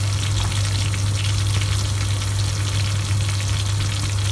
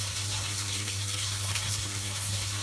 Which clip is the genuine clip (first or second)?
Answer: first